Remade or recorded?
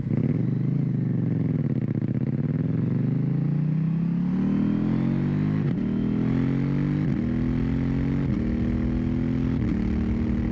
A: recorded